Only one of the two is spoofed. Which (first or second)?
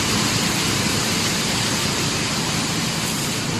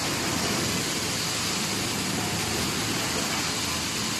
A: first